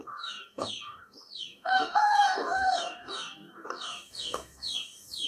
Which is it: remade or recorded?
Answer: remade